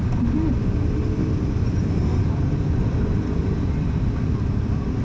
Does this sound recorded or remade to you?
recorded